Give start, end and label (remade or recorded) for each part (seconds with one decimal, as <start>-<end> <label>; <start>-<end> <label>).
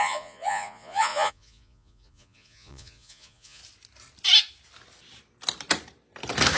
0.0-3.6 remade; 3.6-6.6 recorded